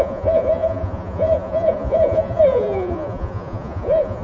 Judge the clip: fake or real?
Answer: fake